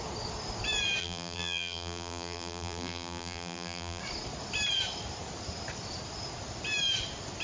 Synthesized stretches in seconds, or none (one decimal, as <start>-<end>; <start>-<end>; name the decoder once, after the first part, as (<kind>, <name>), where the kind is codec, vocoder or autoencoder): 1.0-4.0 (vocoder, BigVGAN v2)